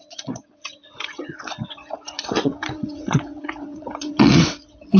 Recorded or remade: remade